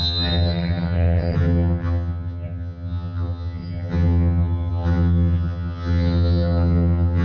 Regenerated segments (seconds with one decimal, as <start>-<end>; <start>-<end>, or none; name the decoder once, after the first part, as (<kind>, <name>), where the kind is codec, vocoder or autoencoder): 0.0-7.2 (vocoder, HiFi-GAN)